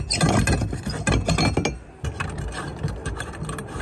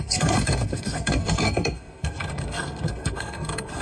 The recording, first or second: first